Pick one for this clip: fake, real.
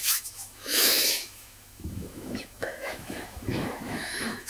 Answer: fake